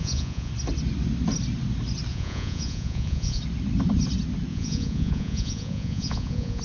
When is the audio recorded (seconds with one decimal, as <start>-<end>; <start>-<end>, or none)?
0.5-2.1; 3.4-4.5